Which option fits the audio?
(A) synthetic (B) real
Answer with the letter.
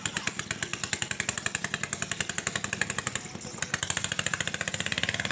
B